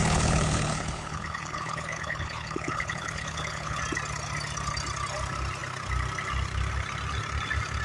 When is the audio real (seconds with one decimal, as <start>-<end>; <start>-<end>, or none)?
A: 3.8-7.8

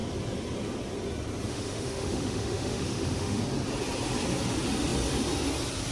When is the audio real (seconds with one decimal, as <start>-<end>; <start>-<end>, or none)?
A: 0.0-1.5; 3.4-5.9

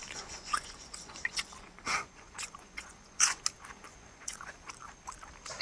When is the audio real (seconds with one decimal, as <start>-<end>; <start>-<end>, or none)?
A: 3.4-3.9; 4.7-5.6

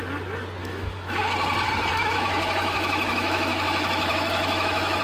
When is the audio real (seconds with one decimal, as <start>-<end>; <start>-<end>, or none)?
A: 0.0-0.6; 1.2-1.9

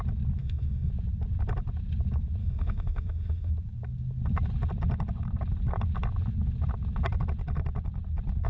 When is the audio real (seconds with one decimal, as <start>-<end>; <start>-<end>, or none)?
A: 0.0-0.4; 0.9-2.4; 3.5-8.5

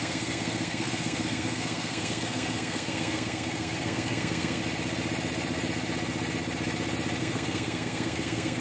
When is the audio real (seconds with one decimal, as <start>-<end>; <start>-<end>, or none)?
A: 4.6-7.2

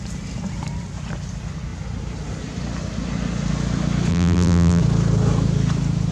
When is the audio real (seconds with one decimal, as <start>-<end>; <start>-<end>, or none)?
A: 0.0-4.1; 4.8-6.1

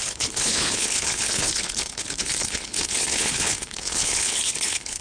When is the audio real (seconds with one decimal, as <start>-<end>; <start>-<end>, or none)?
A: none